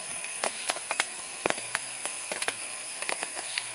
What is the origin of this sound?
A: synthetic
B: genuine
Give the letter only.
A